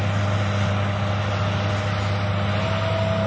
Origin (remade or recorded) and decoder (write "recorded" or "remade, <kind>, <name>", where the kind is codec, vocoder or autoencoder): recorded